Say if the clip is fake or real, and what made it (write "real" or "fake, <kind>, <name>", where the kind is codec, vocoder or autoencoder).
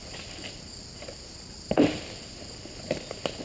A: real